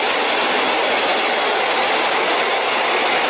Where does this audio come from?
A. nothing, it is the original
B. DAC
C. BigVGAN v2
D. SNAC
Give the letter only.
A